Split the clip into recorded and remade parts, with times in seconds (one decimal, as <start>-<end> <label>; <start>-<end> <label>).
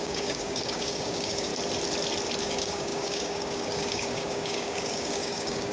0.0-1.5 remade; 1.5-2.4 recorded; 2.4-5.7 remade